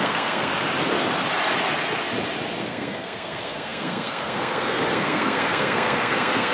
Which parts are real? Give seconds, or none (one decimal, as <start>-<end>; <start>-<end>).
0.5-2.6